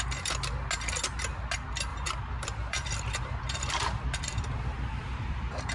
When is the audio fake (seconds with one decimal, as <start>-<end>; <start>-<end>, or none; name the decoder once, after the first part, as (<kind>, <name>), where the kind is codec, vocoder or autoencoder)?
1.9-5.3 (vocoder, BigVGAN v2)